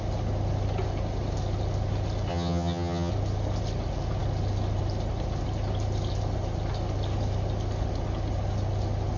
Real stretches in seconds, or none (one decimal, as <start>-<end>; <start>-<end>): 0.0-2.3; 3.1-9.2